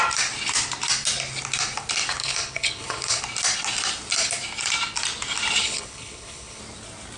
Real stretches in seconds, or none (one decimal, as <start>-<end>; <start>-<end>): 0.0-2.2; 3.2-5.6; 6.6-7.2